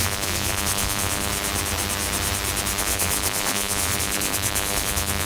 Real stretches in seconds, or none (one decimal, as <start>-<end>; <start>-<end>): 1.3-2.8